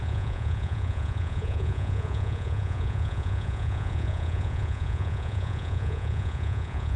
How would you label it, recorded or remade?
remade